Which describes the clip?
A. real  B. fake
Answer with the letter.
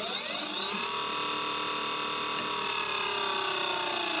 A